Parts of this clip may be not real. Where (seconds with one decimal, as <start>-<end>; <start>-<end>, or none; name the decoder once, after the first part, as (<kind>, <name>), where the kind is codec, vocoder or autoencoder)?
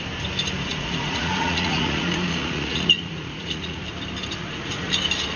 0.7-3.8 (vocoder, Vocos); 4.4-4.9